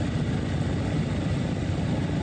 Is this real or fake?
real